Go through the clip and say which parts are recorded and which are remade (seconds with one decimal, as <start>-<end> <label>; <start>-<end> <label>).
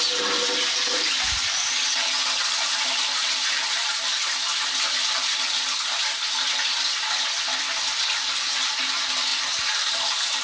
0.0-10.4 recorded